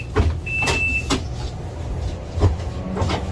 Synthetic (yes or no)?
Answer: no